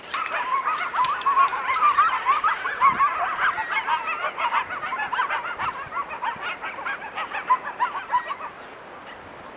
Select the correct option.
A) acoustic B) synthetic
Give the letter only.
A